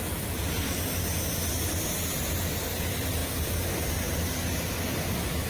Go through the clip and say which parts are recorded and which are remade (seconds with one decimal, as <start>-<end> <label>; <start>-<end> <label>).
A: 0.0-5.5 recorded